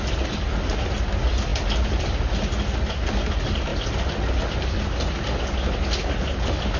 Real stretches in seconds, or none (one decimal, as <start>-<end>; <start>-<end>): 0.0-6.8